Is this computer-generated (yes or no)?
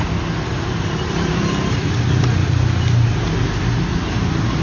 no